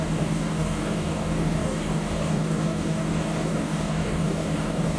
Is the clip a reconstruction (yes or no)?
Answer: yes